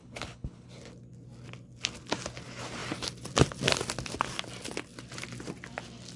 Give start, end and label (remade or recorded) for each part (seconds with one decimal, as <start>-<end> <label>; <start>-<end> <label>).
0.0-0.7 remade; 0.7-6.2 recorded